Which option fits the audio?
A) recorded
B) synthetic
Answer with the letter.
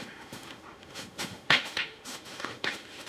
B